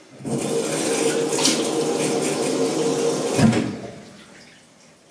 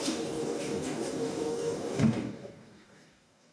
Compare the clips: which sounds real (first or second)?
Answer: first